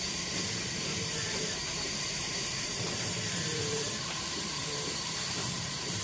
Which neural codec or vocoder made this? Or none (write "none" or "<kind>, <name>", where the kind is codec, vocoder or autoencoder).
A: vocoder, BigVGAN v2